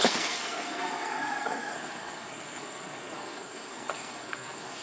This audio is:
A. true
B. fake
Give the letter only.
B